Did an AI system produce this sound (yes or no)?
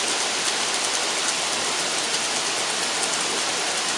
no